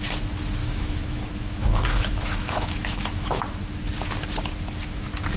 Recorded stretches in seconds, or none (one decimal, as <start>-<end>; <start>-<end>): 0.0-0.6; 3.4-5.4